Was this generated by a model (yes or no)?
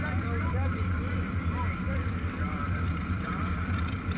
yes